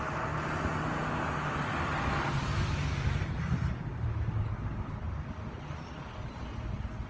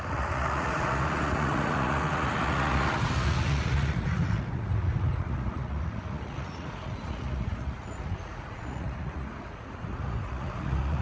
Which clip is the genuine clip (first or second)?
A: first